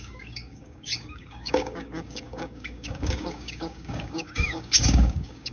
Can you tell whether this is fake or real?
fake